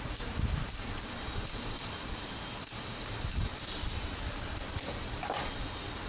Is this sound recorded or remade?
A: remade